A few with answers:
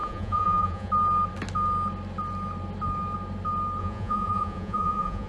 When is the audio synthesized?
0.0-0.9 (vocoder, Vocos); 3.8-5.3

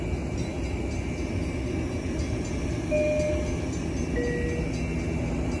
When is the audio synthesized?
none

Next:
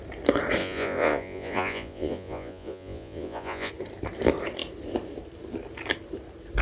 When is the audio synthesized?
0.6-3.7 (vocoder, Vocos)